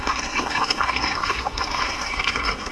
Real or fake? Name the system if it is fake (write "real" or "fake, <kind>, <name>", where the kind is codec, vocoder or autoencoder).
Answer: fake, codec, SNAC